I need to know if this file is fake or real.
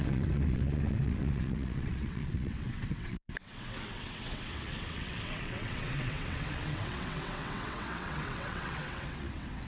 fake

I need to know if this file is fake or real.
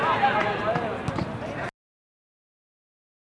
real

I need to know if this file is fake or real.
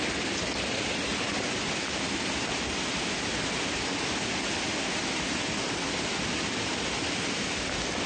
real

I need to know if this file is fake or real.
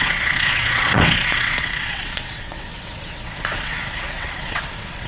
fake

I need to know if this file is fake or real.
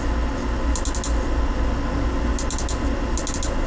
real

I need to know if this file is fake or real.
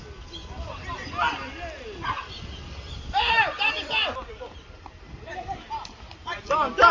real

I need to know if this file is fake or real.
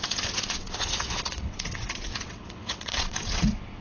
fake